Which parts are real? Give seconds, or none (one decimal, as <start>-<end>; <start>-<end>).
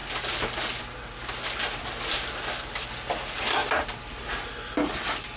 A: 0.0-5.4